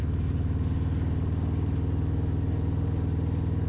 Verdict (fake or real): real